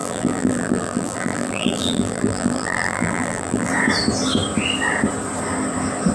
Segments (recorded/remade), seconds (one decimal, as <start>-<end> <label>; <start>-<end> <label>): 0.0-3.7 remade; 3.7-6.1 recorded

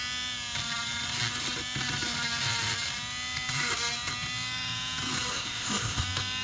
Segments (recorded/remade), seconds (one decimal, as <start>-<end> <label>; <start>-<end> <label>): 0.0-5.3 recorded; 5.3-6.0 remade; 6.0-6.4 recorded